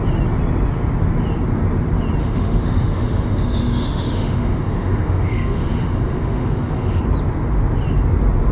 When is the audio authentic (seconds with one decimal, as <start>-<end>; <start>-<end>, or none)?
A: 0.0-2.2; 7.0-8.5